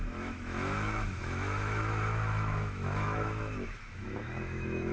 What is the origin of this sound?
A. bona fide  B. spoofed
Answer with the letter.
B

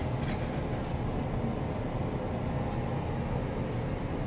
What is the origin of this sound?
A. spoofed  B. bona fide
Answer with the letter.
B